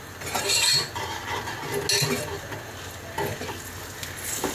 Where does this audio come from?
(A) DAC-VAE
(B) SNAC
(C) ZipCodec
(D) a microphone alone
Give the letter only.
D